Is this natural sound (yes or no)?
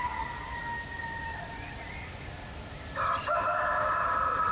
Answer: yes